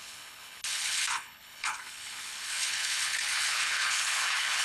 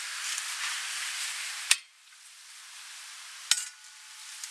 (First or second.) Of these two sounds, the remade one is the first